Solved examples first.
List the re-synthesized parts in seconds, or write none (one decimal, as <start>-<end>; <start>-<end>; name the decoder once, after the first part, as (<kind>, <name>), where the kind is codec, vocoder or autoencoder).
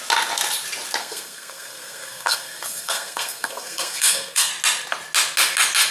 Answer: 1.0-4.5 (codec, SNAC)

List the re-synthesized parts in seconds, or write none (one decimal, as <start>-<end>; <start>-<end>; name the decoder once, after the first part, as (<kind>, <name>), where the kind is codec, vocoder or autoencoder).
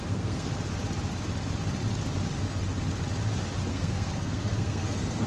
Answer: 0.0-0.5 (codec, SNAC); 3.7-5.3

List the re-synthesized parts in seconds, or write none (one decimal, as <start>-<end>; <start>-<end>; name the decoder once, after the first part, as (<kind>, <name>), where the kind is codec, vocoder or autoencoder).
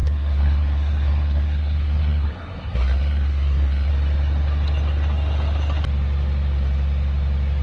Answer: 0.0-3.9 (codec, SNAC)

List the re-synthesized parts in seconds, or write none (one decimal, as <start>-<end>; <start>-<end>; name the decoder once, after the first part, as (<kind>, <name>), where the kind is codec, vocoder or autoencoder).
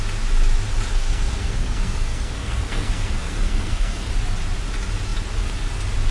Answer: 0.9-4.1 (codec, SNAC)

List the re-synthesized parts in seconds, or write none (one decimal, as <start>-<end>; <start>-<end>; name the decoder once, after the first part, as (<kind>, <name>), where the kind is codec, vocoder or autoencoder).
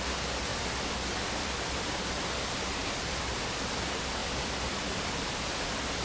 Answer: none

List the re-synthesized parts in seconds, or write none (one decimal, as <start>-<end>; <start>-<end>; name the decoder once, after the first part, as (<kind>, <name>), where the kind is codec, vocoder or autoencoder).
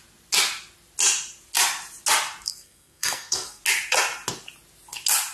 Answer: 2.5-3.6 (codec, SNAC)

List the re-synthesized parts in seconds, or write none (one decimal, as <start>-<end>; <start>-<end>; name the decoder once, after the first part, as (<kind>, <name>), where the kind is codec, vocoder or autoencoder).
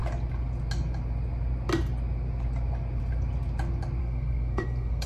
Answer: 4.0-5.1 (codec, SNAC)